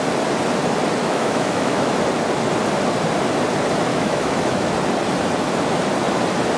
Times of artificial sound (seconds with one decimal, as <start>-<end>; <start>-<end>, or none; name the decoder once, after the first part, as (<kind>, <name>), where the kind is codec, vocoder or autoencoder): 1.0-1.9 (autoencoder, DAC-VAE); 3.9-4.7